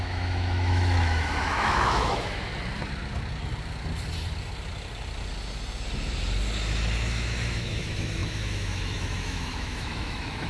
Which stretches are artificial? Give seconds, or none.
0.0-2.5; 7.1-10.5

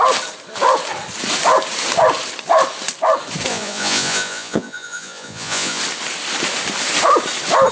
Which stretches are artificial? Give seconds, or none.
3.5-5.8